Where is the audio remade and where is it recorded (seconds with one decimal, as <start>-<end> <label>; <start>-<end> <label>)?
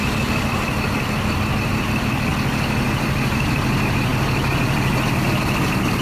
0.0-2.3 remade; 2.3-3.0 recorded; 3.0-4.1 remade; 4.1-6.0 recorded